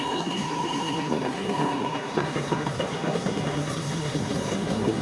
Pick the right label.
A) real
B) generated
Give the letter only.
B